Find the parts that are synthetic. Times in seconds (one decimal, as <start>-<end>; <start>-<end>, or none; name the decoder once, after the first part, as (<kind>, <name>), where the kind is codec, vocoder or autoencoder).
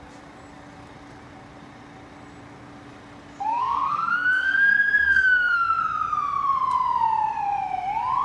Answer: 3.5-5.8 (codec, SNAC)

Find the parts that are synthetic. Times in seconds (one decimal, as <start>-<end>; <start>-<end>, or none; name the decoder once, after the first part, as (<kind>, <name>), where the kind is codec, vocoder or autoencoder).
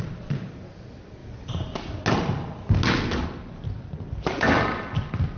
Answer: none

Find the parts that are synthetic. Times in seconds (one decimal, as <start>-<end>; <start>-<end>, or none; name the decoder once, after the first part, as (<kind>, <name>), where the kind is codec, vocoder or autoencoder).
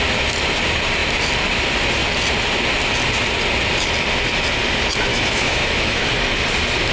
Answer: 5.1-6.0 (autoencoder, DAC-VAE)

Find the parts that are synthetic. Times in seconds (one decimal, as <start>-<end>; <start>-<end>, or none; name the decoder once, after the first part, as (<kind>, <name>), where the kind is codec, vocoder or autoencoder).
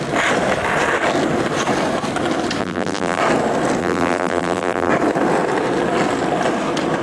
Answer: 2.6-3.2 (vocoder, BigVGAN v2); 3.8-4.9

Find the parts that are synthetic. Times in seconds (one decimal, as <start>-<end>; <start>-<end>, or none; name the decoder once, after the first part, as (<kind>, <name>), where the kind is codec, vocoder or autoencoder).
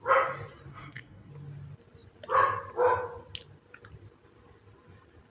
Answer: 0.7-1.3 (codec, SNAC)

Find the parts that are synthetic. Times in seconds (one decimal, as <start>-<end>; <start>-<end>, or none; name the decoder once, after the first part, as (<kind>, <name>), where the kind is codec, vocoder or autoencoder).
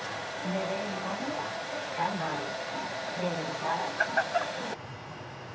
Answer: 0.0-0.4 (vocoder, Vocos); 1.0-5.5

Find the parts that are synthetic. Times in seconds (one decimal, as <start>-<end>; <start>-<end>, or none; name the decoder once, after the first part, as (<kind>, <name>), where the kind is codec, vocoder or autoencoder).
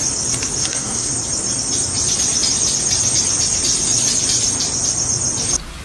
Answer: 0.6-1.1 (codec, SNAC)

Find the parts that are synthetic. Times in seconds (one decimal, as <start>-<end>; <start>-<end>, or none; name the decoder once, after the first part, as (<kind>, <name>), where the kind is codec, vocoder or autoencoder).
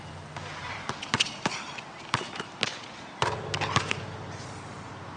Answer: 0.6-3.3 (vocoder, BigVGAN v2)